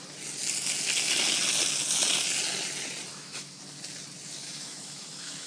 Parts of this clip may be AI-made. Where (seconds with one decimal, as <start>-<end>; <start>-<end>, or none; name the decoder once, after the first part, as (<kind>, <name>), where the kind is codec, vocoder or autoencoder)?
3.1-3.6 (autoencoder, DAC-VAE); 4.4-5.5

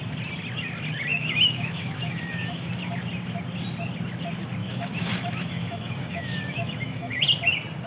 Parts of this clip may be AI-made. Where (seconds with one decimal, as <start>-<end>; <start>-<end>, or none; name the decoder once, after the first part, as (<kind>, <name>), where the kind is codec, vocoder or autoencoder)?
1.1-2.7 (autoencoder, DAC-VAE); 4.6-7.2